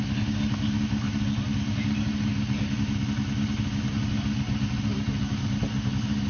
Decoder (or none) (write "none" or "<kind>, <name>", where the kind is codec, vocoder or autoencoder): none